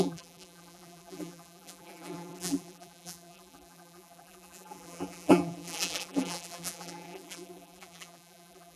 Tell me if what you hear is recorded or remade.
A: remade